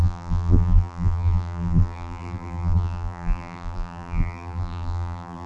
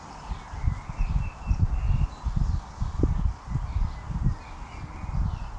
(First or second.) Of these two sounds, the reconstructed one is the first